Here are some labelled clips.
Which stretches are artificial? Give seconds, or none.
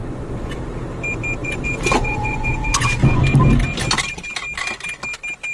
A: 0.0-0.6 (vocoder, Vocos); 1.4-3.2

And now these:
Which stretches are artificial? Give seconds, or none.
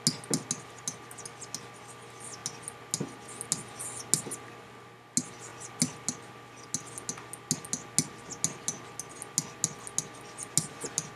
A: none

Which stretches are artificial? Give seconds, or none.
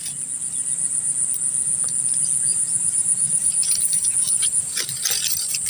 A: 2.5-4.8 (vocoder, Vocos)